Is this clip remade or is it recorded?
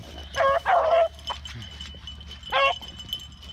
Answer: recorded